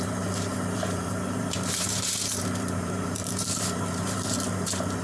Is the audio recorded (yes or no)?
no